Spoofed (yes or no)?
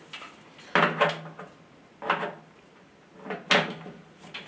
no